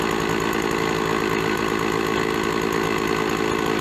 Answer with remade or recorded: recorded